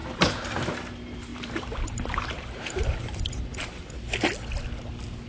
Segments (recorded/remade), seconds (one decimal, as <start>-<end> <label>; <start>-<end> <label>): 0.0-1.3 recorded; 1.3-3.9 remade; 3.9-5.3 recorded